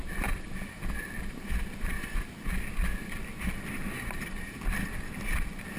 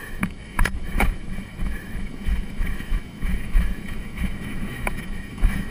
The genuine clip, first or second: first